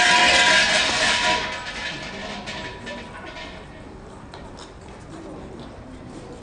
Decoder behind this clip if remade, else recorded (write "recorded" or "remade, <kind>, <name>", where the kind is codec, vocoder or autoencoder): recorded